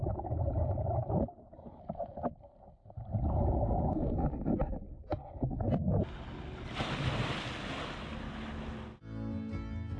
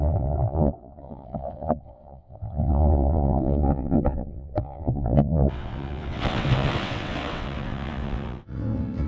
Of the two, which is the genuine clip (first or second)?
first